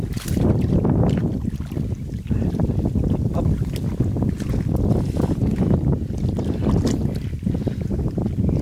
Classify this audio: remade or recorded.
recorded